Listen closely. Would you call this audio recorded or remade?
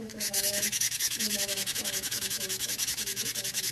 remade